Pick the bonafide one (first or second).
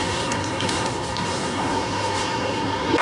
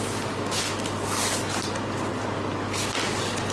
second